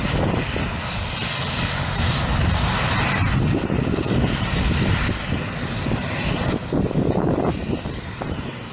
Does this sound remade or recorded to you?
recorded